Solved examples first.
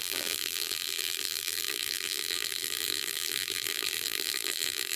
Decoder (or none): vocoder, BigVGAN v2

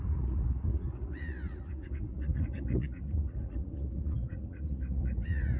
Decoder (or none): vocoder, Vocos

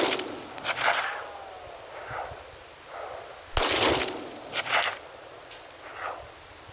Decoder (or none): none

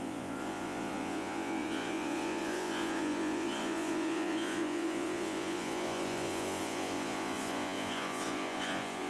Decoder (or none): vocoder, Vocos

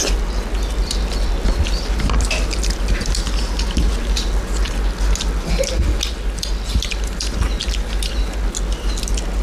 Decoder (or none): none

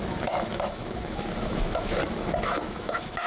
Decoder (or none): autoencoder, DAC-VAE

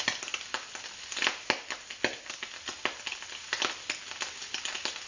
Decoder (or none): none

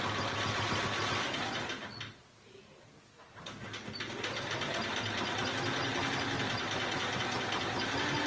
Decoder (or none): none